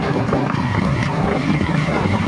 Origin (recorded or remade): remade